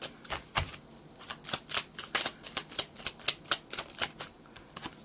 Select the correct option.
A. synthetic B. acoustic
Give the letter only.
B